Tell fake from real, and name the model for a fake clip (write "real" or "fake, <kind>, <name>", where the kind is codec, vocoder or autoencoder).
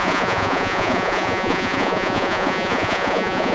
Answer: fake, vocoder, Vocos